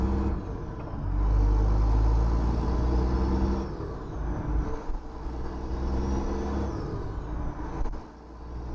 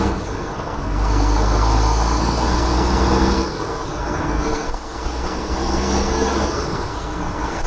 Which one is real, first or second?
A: first